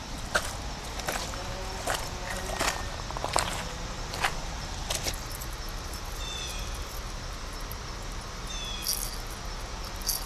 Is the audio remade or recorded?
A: recorded